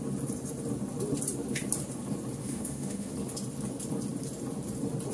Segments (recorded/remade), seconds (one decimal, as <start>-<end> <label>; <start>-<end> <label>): 0.0-2.4 recorded; 2.4-3.1 remade; 3.1-5.1 recorded